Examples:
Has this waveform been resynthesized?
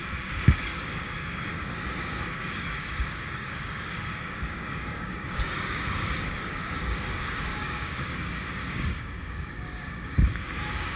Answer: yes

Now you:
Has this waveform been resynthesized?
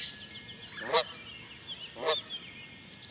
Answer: no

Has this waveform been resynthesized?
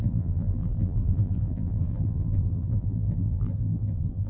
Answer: yes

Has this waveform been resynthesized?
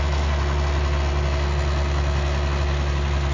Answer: no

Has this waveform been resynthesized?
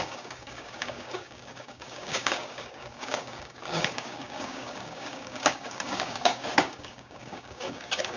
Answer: yes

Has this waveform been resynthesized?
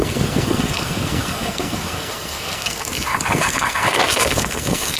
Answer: yes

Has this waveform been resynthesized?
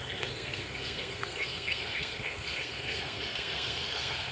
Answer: yes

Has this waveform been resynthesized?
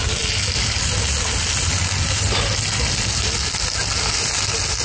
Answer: no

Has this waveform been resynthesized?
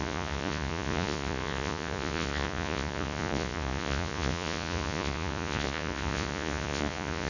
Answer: yes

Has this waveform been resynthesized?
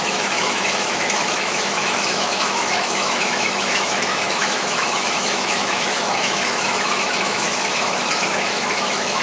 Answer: yes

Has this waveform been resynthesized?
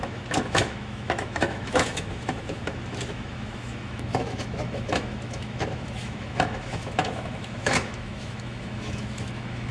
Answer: yes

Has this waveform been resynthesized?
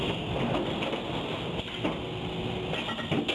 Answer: no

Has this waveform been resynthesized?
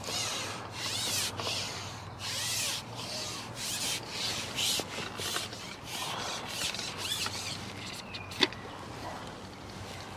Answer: no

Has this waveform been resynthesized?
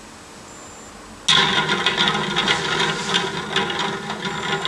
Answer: no